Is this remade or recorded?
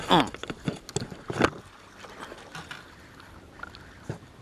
recorded